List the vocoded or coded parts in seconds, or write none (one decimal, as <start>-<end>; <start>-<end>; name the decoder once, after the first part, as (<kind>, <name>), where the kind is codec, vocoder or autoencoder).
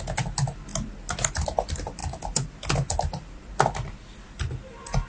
none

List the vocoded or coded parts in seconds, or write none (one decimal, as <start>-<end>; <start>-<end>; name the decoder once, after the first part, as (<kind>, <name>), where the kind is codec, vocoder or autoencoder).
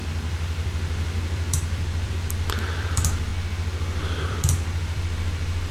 0.0-3.3 (vocoder, BigVGAN v2); 4.2-5.7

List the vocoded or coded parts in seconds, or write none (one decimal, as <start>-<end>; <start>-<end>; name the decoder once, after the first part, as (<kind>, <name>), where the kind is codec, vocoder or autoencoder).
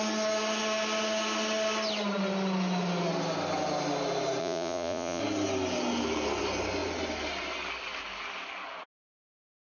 4.4-5.2 (vocoder, Vocos)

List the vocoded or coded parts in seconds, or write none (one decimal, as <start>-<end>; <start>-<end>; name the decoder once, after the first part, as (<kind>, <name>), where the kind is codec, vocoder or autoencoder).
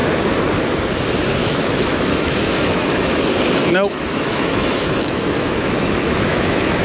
1.4-3.2 (autoencoder, DAC-VAE); 3.6-6.8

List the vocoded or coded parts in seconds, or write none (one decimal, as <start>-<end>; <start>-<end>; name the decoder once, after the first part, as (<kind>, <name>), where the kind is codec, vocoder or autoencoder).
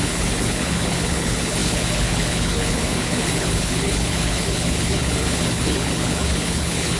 0.0-7.0 (codec, HILCodec)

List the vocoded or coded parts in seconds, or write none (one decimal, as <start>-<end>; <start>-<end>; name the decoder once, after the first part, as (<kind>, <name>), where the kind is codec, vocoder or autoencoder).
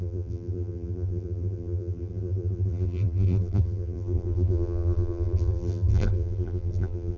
0.0-7.2 (vocoder, BigVGAN v2)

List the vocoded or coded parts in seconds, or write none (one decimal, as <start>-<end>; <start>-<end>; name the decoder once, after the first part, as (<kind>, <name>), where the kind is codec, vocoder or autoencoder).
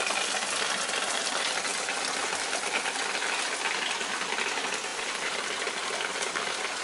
4.9-5.5 (vocoder, BigVGAN v2)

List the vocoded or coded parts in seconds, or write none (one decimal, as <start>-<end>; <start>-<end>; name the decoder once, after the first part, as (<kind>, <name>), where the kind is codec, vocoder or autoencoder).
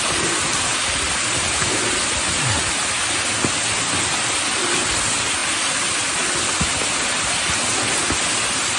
none